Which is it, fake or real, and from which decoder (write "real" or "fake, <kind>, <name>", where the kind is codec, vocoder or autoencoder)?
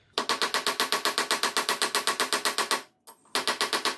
real